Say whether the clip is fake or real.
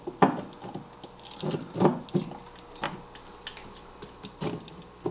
real